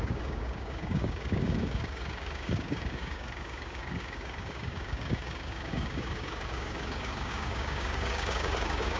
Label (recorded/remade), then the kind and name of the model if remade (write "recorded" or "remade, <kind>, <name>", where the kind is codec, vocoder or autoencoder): remade, codec, DAC